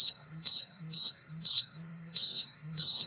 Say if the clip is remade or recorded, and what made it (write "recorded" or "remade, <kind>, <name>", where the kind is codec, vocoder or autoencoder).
remade, codec, SNAC